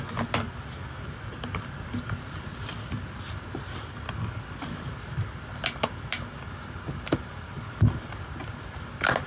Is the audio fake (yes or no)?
no